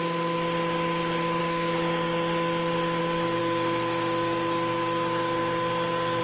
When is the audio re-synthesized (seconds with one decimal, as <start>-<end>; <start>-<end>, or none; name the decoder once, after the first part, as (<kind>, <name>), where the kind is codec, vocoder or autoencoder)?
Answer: 1.4-3.0 (codec, DAC); 3.4-6.2